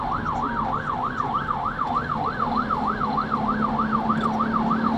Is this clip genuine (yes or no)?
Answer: yes